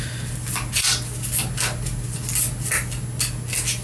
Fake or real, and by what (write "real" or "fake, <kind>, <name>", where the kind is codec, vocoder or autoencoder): real